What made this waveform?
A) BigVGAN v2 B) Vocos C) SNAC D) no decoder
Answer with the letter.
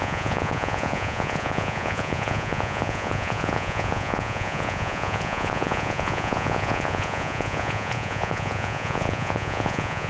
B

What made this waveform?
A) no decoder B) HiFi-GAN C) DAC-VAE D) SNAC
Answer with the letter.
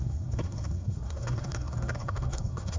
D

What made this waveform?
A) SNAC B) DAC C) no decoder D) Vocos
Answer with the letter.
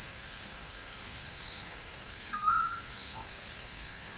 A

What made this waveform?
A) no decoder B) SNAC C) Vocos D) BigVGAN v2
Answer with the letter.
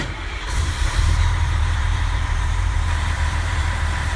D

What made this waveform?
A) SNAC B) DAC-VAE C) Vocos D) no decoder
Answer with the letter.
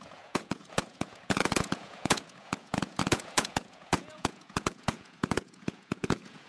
C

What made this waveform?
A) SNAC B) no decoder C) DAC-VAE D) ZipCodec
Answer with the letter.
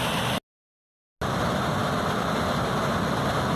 B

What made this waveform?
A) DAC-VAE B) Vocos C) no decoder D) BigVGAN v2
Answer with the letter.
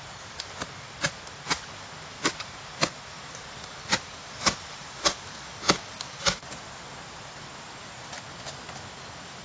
C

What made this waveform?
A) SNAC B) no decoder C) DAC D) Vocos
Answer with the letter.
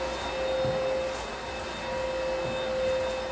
B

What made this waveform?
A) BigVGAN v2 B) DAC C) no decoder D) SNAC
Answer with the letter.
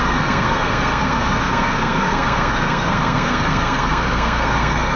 D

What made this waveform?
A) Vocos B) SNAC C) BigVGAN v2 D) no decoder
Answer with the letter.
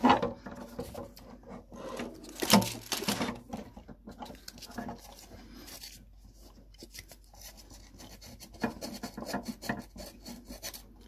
D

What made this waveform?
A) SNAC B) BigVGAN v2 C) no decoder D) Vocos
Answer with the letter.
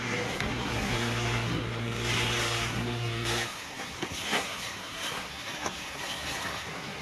A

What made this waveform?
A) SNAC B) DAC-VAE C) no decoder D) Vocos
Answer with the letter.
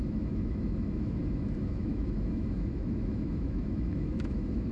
B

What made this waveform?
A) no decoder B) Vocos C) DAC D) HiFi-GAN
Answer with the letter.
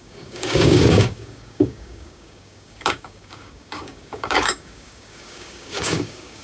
C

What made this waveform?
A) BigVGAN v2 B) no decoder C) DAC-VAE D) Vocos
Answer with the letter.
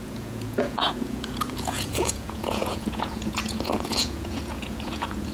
D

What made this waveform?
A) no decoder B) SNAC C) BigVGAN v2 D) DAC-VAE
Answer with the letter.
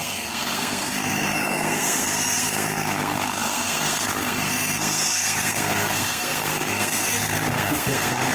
B